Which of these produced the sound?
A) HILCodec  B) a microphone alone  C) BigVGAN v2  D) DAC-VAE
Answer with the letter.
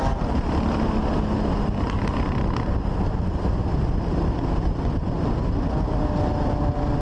B